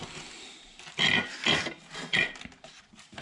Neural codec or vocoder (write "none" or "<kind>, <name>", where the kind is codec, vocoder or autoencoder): none